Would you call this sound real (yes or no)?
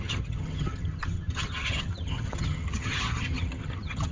no